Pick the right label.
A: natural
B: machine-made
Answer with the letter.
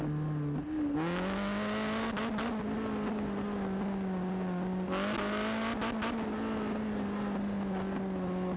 A